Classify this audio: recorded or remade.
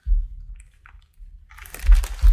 recorded